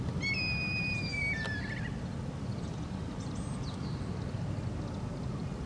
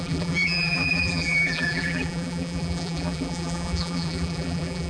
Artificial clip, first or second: second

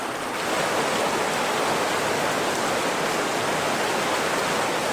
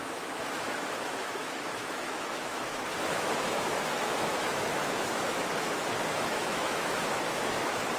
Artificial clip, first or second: second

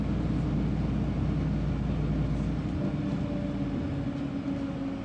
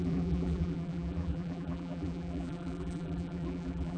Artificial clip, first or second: second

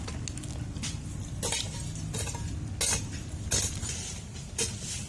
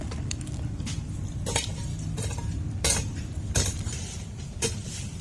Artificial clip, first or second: second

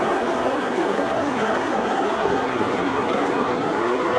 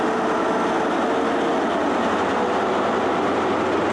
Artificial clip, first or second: first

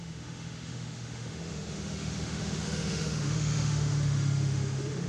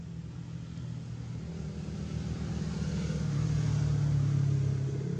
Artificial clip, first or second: first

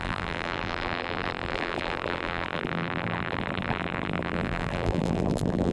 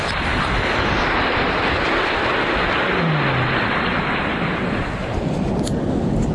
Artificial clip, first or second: first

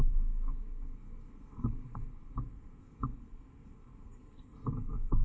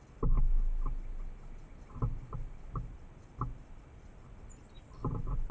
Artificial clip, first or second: first